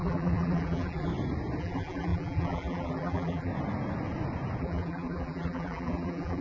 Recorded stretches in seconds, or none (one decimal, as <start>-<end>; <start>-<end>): 1.1-1.6; 3.5-4.6